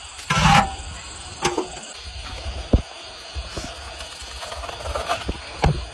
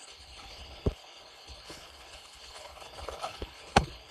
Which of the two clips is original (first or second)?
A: first